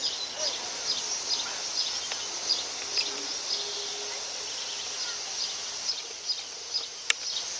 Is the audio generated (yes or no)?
no